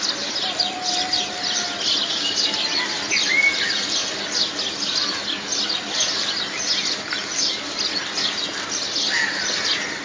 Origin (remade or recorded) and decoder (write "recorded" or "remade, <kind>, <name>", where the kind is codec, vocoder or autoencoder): recorded